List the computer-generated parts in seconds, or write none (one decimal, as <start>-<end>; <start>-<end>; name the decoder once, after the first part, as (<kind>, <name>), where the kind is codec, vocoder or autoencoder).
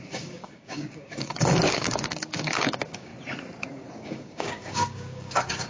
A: 0.0-3.1 (codec, DAC); 3.7-5.7